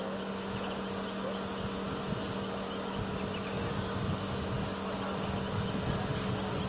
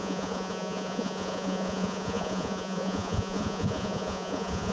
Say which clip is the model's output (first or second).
second